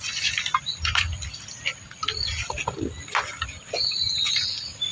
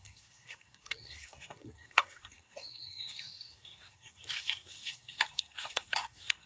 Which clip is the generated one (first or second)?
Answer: second